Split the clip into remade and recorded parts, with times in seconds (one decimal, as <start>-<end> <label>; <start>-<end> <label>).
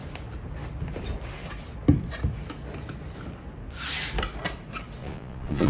0.0-5.0 recorded; 5.0-5.7 remade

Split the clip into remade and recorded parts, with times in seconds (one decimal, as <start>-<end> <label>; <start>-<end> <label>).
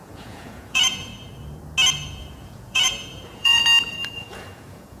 0.0-1.1 remade; 1.1-2.1 recorded; 2.1-3.6 remade; 3.6-4.1 recorded; 4.1-5.0 remade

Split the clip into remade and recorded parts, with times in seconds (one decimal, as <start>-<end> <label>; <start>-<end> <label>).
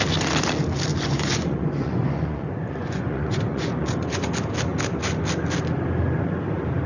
0.0-0.9 recorded; 0.9-4.3 remade; 4.3-6.9 recorded